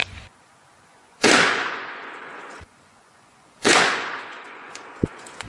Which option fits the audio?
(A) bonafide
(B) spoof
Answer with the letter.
B